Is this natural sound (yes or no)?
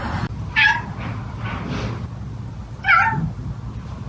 yes